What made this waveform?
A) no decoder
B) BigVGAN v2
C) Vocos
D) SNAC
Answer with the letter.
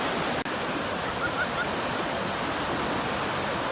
A